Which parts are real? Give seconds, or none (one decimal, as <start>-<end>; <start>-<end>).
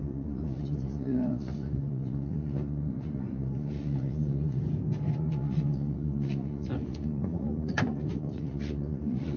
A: 4.6-5.1